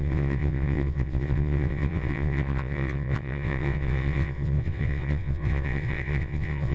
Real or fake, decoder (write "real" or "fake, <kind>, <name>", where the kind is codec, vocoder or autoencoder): fake, vocoder, WaveNeXt